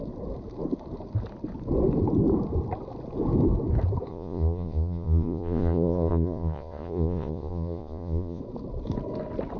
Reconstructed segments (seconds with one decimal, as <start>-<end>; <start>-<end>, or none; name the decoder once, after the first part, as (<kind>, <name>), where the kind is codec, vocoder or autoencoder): 4.1-8.4 (vocoder, Vocos)